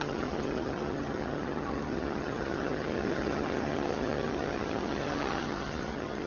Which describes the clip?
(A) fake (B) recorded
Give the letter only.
A